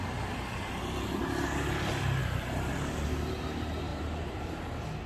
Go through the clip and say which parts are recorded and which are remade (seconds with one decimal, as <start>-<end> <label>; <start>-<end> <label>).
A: 0.0-2.2 recorded; 2.2-2.7 remade; 2.7-3.9 recorded; 3.9-4.6 remade; 4.6-5.1 recorded